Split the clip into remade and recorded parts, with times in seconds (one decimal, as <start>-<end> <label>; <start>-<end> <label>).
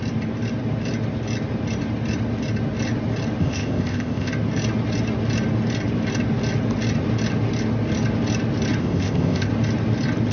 0.0-3.4 recorded; 3.4-4.3 remade; 4.3-8.8 recorded; 8.8-9.5 remade; 9.5-10.3 recorded